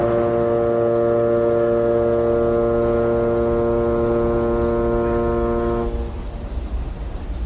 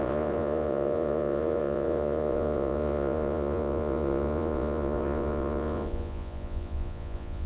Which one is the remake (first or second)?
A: second